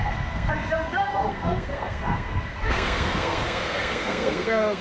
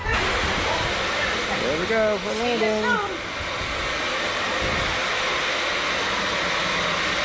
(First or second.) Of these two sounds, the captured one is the second